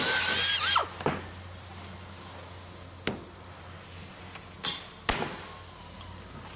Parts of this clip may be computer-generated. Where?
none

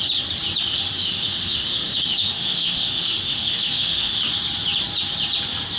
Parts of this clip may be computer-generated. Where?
0.7-4.2 (autoencoder, DAC-VAE)

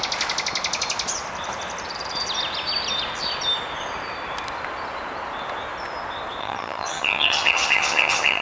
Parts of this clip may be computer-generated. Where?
6.4-8.4 (vocoder, HiFi-GAN)

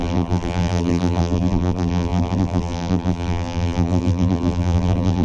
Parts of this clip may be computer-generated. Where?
0.0-5.2 (vocoder, BigVGAN v2)

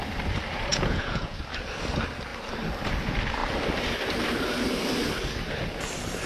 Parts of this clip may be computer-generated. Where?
0.7-1.4 (vocoder, Vocos)